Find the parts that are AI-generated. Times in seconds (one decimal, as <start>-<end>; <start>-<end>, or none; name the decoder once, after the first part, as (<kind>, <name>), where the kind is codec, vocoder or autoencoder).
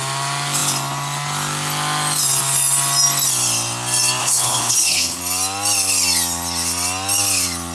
4.2-5.2 (codec, HILCodec)